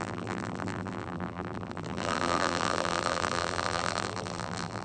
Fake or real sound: fake